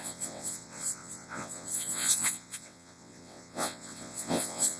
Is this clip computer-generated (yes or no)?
yes